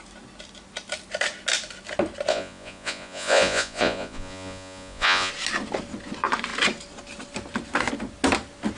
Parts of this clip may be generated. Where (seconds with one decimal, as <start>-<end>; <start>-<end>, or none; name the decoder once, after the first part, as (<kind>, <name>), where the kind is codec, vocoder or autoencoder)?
2.3-5.3 (vocoder, Vocos)